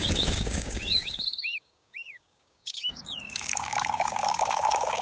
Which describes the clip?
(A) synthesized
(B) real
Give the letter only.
A